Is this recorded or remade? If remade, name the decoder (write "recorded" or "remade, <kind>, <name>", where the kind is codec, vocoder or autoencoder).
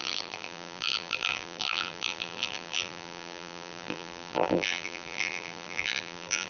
remade, vocoder, BigVGAN v2